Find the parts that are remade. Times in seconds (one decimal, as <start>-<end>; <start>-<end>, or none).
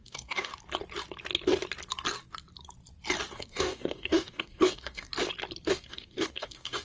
0.0-0.5; 3.3-5.1; 5.7-6.8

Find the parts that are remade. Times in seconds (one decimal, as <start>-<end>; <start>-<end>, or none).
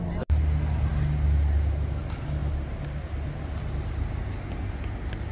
none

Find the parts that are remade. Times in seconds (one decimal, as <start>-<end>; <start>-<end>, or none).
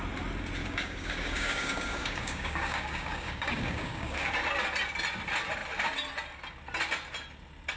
0.6-4.3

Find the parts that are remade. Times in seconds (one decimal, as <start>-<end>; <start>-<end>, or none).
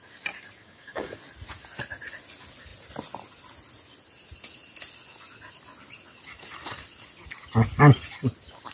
0.6-1.2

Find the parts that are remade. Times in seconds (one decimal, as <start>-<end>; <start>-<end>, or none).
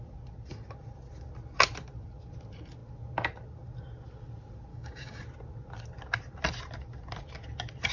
4.7-5.2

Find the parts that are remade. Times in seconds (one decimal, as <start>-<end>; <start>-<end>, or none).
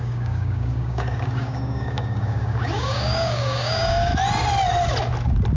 0.0-4.1